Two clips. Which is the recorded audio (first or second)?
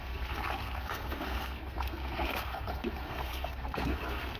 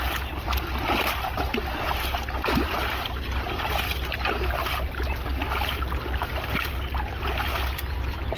second